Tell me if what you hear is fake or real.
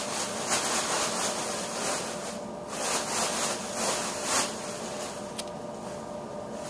real